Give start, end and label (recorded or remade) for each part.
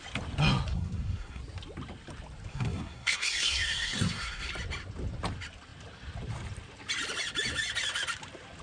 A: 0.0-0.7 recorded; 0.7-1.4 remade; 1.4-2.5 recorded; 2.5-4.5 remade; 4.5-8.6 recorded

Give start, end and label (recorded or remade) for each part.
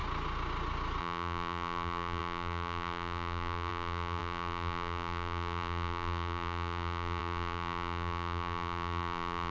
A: 0.0-1.0 recorded; 1.0-9.5 remade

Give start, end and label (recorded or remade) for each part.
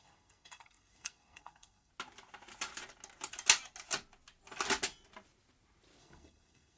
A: 0.0-1.9 remade; 1.9-6.0 recorded; 6.0-6.8 remade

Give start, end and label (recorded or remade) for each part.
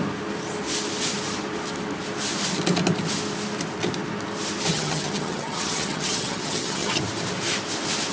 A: 0.0-4.7 recorded; 4.7-7.0 remade; 7.0-8.1 recorded